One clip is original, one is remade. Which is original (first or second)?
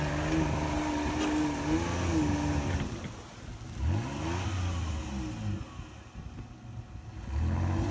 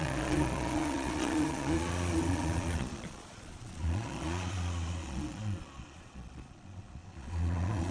first